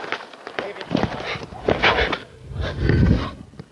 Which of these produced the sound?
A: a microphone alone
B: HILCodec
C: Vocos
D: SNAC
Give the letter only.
A